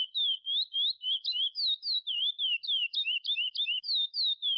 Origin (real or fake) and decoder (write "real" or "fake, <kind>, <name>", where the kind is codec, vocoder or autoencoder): real